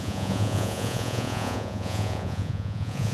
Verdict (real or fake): fake